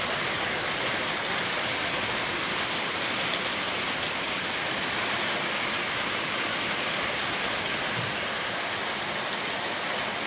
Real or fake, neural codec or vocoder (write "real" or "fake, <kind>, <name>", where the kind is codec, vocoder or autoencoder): real